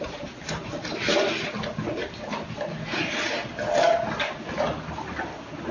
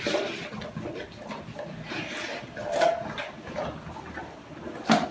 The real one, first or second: first